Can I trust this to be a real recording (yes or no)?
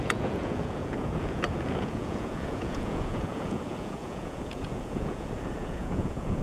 no